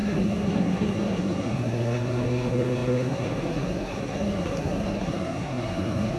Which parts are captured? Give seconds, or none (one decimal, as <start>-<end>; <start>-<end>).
none